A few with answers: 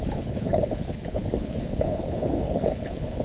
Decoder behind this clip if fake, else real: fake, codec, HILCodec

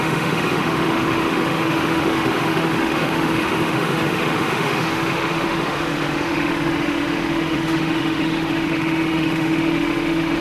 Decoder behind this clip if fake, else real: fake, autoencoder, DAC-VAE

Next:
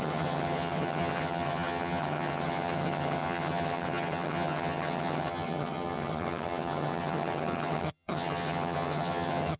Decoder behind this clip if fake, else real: fake, vocoder, HiFi-GAN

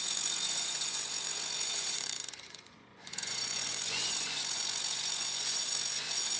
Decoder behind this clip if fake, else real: fake, vocoder, Vocos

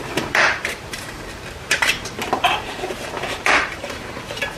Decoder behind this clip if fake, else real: fake, vocoder, BigVGAN v2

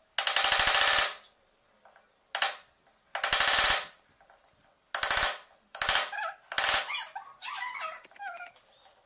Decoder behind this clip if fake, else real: real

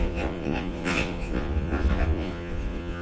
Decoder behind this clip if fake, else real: fake, vocoder, Vocos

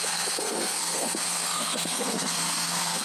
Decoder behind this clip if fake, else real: fake, codec, SNAC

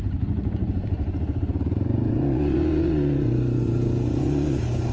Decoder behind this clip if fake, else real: fake, vocoder, Vocos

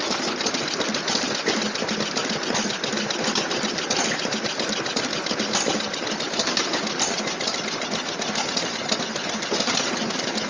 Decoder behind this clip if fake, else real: real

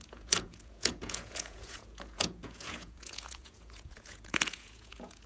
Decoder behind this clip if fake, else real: fake, vocoder, Vocos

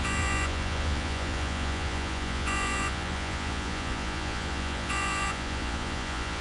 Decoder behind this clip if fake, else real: fake, vocoder, Vocos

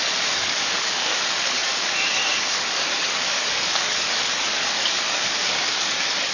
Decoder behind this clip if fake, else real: fake, codec, DAC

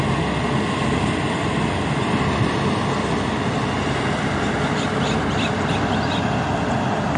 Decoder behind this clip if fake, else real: real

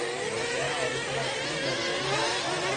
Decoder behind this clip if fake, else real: real